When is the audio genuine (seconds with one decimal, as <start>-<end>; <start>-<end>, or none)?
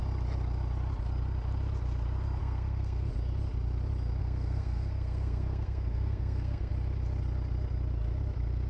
0.0-2.4; 3.1-4.2; 6.7-8.7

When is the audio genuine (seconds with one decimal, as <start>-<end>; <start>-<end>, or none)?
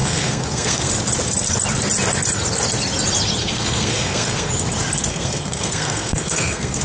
0.9-3.4; 4.5-5.1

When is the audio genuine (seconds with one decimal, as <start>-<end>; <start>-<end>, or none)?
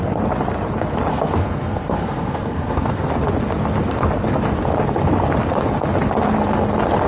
0.0-1.1; 3.1-7.1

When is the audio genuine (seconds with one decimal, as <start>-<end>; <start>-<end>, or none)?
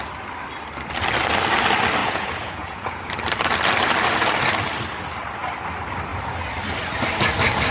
0.0-2.0; 3.1-7.7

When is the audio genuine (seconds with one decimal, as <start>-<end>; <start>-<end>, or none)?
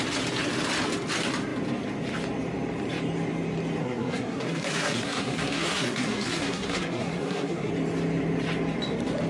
0.0-3.8; 7.7-9.3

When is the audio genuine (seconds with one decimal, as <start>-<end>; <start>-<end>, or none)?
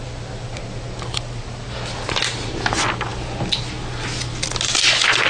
0.0-5.3